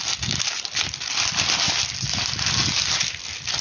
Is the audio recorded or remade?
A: recorded